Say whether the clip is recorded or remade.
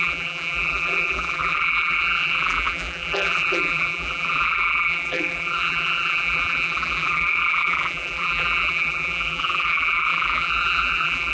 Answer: remade